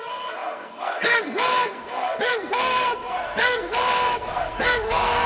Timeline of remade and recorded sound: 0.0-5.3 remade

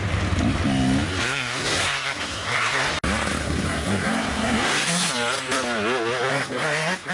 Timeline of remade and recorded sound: 0.0-1.1 recorded; 1.1-2.9 remade; 2.9-3.4 recorded; 3.4-5.1 remade; 5.1-6.3 recorded; 6.3-7.1 remade